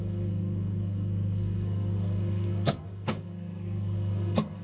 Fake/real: fake